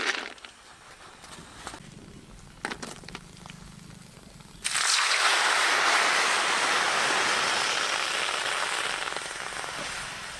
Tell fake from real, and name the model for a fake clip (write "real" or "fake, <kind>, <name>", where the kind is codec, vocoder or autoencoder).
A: real